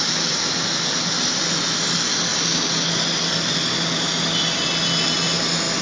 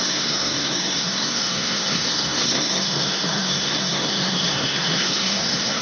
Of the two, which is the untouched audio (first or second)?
first